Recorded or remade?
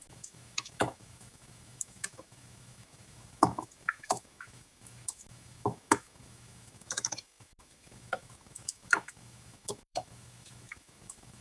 remade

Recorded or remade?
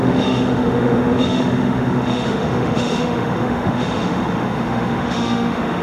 remade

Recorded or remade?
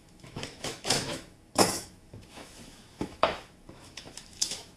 remade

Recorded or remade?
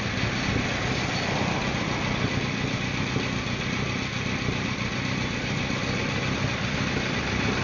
recorded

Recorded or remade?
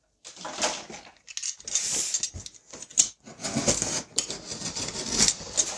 recorded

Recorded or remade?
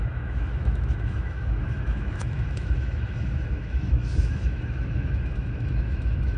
remade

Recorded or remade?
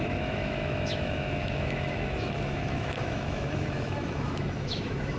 remade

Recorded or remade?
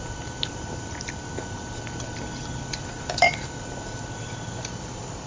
recorded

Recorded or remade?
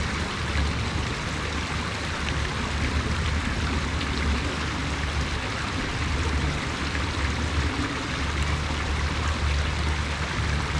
recorded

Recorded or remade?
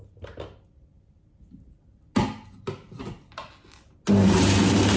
recorded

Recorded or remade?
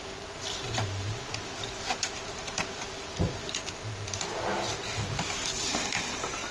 recorded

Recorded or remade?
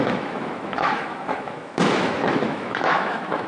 remade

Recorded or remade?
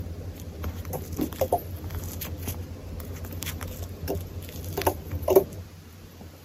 recorded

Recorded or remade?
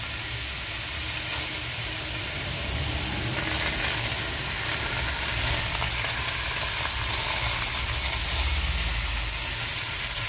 recorded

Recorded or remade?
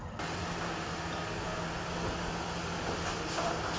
recorded